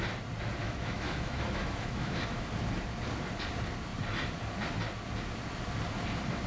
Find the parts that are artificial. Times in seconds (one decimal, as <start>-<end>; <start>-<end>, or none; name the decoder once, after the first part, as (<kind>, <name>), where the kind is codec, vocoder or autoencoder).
0.6-2.5 (autoencoder, DAC-VAE)

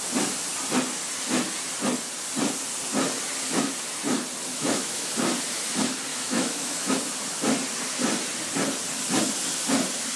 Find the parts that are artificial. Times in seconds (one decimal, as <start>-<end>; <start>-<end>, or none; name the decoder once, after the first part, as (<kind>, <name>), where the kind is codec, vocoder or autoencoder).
4.5-5.1 (autoencoder, DAC-VAE); 6.1-6.9

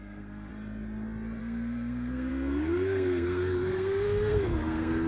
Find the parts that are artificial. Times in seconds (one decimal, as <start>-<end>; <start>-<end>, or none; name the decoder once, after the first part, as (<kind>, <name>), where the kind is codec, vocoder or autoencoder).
0.0-0.5 (codec, SNAC); 1.4-5.1

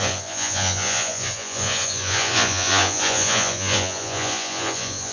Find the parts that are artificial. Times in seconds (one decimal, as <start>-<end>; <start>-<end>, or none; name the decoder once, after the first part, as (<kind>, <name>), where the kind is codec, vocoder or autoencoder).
0.0-5.1 (vocoder, Vocos)

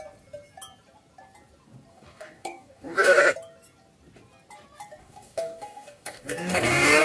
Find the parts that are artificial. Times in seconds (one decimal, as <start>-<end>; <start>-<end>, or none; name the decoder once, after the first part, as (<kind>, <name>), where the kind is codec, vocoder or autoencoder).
1.9-3.2 (codec, DAC); 5.0-7.0